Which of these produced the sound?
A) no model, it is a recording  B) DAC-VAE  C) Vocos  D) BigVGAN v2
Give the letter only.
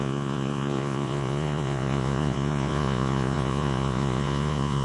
C